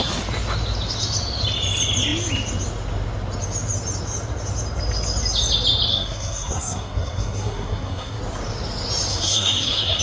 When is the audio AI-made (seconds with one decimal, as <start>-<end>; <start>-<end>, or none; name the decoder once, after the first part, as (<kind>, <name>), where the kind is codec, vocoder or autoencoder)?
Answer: 5.9-8.2 (codec, SNAC); 9.1-10.0